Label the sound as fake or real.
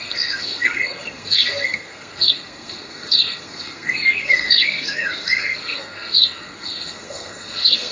fake